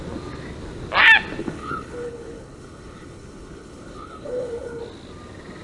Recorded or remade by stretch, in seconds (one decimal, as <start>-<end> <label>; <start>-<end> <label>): 0.0-1.4 recorded; 1.4-4.8 remade; 4.8-5.6 recorded